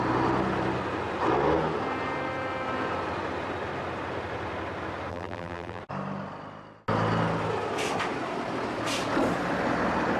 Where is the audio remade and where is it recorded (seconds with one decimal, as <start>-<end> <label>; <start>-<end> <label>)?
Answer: 0.0-5.1 recorded; 5.1-5.8 remade; 5.8-10.2 recorded